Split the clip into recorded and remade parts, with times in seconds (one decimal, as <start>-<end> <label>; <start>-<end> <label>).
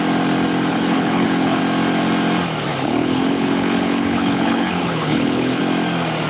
0.0-0.7 recorded; 0.7-1.6 remade; 1.6-2.7 recorded; 2.7-5.6 remade; 5.6-6.3 recorded